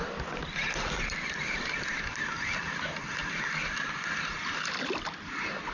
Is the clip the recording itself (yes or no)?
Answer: yes